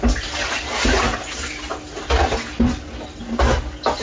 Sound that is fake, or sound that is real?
real